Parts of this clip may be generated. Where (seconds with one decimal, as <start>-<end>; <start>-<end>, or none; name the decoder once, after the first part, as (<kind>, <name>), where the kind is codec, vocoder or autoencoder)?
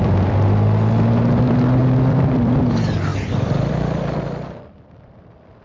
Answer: 0.0-5.6 (vocoder, BigVGAN v2)